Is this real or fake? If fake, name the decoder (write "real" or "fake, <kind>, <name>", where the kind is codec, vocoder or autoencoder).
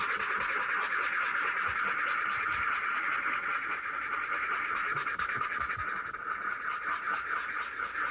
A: real